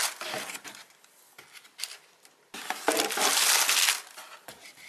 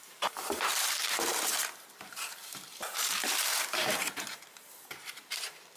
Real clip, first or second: first